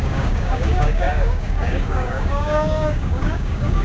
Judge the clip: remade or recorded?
remade